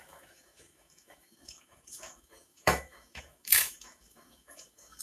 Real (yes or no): no